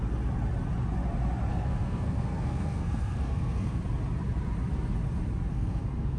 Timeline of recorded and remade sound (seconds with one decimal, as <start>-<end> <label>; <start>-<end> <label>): 0.0-1.5 recorded; 1.5-3.8 remade; 3.8-5.5 recorded; 5.5-6.2 remade